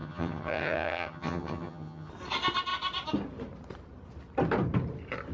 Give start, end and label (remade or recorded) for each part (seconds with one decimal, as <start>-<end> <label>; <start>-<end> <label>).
0.0-2.1 remade; 2.1-5.3 recorded